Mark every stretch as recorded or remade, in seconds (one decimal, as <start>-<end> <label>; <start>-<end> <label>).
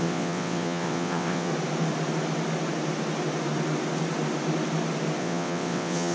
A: 0.0-1.5 remade; 1.5-5.2 recorded; 5.2-6.1 remade